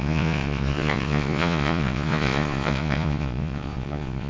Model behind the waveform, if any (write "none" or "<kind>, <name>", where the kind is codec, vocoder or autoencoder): vocoder, Vocos